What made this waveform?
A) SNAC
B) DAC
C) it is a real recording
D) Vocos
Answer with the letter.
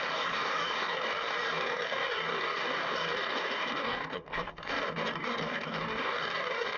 B